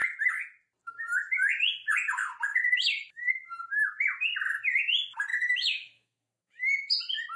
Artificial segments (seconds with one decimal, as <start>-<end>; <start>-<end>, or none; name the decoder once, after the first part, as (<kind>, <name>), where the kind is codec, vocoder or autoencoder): 2.5-3.3 (autoencoder, DAC-VAE); 5.3-6.6